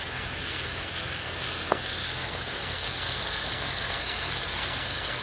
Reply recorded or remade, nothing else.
remade